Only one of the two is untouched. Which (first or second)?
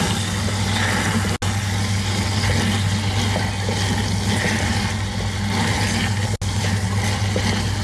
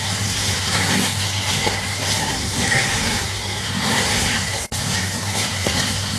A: first